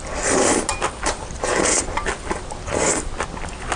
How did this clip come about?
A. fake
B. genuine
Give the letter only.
B